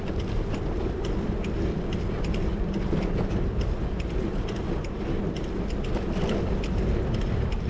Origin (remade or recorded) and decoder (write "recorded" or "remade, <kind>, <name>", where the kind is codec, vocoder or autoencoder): recorded